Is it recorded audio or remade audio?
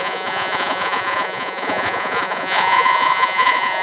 remade